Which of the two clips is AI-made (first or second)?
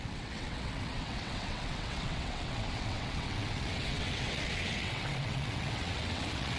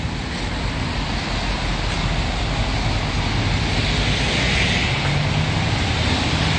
first